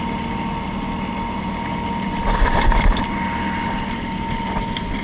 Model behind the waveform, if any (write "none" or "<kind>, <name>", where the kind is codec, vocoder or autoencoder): none